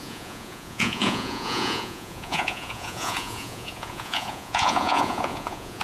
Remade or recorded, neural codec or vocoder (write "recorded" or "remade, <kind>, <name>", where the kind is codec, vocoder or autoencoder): remade, vocoder, Vocos